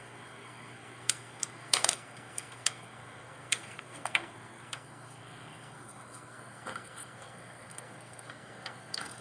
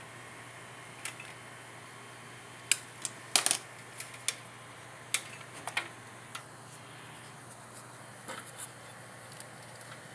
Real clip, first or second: second